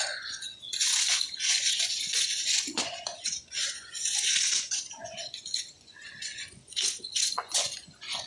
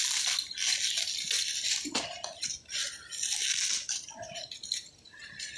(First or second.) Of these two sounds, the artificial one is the first